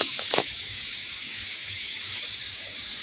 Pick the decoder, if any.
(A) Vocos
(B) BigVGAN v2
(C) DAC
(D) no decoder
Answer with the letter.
C